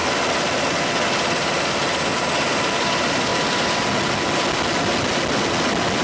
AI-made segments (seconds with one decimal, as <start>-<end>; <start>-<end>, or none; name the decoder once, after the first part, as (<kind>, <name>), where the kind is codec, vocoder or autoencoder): none

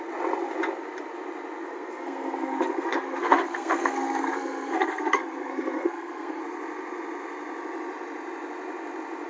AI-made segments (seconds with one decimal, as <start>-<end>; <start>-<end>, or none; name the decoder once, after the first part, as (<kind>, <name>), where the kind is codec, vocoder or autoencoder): 1.6-6.4 (codec, SNAC)